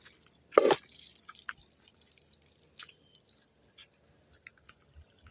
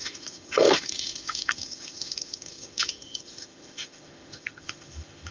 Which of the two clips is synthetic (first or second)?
second